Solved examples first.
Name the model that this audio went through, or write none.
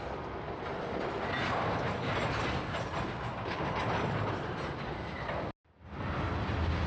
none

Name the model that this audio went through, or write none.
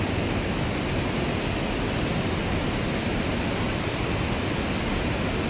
none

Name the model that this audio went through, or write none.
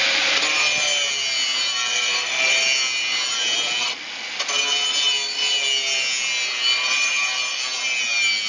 none